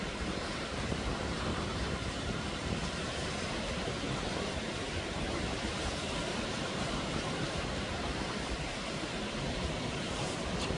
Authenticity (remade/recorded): remade